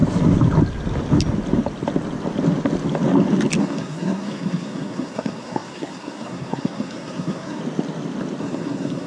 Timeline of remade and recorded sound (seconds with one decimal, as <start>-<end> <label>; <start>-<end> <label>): 0.0-3.6 recorded; 3.6-7.6 remade; 7.6-8.4 recorded; 8.4-9.1 remade